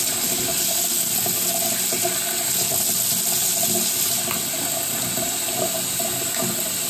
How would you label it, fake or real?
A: real